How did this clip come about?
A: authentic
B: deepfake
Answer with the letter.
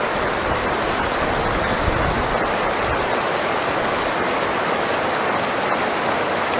A